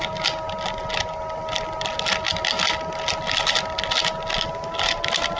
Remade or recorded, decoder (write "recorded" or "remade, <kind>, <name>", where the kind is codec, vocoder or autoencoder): recorded